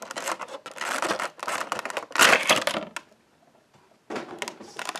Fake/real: real